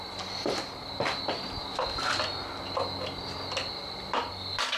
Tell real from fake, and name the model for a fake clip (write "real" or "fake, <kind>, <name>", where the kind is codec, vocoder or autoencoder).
real